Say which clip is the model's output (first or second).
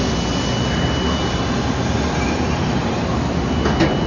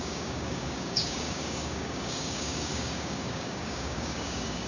second